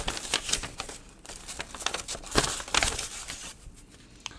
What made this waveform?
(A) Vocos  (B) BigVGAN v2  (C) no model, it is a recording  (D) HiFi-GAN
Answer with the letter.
C